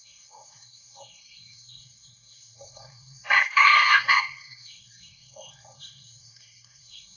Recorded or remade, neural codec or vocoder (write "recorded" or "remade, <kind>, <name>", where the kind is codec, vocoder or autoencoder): remade, codec, SNAC